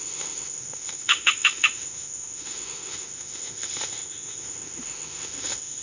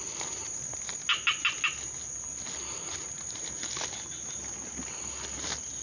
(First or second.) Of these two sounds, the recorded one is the second